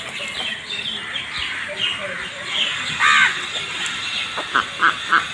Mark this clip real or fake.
real